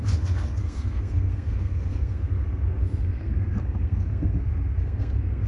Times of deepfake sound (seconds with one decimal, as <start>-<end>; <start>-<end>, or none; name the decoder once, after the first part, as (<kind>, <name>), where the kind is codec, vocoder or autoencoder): 0.0-5.5 (codec, SNAC)